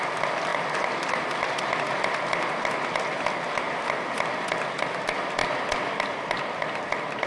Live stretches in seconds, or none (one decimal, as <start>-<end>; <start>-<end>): 0.0-7.3